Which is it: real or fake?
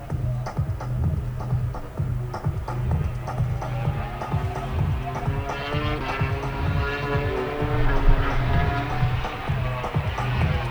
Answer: real